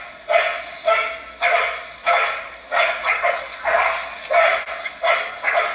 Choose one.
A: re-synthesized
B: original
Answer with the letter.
B